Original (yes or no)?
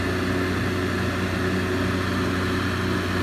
yes